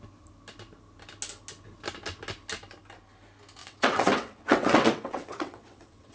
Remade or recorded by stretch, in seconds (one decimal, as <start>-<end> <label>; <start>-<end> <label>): 0.0-3.6 recorded; 3.6-6.1 remade